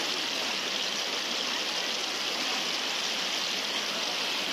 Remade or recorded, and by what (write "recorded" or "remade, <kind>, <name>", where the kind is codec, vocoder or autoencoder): recorded